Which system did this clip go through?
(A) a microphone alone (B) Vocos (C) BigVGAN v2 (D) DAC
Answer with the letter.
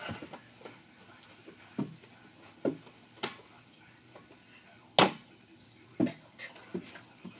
A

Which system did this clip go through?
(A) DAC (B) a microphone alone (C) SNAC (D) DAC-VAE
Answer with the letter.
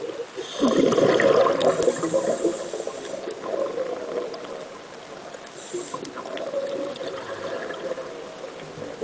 B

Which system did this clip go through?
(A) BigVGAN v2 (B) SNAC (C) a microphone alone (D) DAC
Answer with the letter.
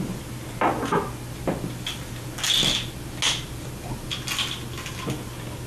C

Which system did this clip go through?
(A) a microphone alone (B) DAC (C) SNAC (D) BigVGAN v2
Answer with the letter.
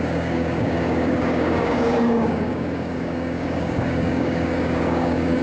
B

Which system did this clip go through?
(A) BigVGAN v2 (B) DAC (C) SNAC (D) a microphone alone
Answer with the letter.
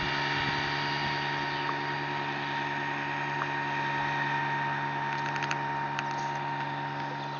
D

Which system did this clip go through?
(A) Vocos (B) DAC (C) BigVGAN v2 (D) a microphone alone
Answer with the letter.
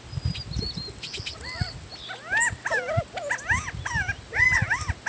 D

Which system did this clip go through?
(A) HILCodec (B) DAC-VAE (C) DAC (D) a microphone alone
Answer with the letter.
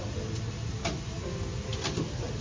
D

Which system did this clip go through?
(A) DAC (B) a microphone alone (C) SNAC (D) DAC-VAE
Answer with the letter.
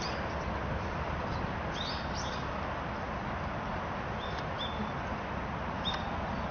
B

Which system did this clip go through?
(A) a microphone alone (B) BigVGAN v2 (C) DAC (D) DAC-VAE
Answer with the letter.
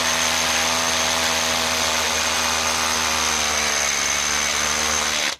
A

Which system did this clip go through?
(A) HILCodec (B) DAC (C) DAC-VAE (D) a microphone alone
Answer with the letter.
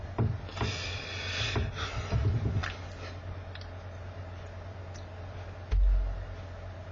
D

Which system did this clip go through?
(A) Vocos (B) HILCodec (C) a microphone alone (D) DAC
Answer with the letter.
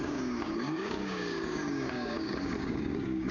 D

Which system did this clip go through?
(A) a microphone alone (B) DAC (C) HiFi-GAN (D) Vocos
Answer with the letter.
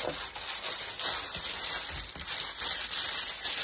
A